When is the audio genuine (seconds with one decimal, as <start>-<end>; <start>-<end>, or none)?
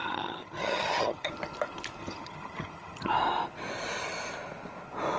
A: 1.3-2.0; 3.1-5.2